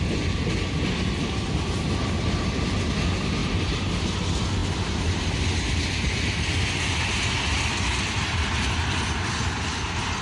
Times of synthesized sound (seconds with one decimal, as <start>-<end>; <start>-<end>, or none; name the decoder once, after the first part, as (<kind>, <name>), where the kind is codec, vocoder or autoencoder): 3.4-3.9 (vocoder, BigVGAN v2); 4.6-7.0